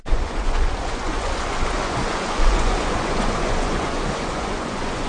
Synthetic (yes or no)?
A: yes